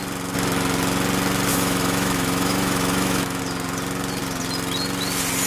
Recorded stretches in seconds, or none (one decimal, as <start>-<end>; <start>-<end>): 0.0-1.5; 3.4-5.5